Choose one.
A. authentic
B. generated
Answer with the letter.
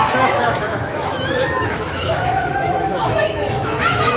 B